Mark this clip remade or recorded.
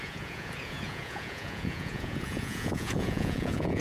remade